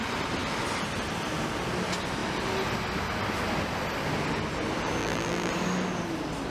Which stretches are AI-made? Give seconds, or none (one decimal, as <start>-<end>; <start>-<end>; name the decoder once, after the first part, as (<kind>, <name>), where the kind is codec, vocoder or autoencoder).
5.0-5.5 (vocoder, BigVGAN v2)